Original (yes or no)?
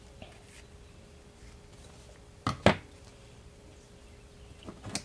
yes